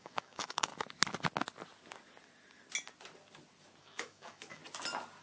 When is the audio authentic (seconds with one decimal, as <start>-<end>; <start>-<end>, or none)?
0.7-3.8; 4.6-5.2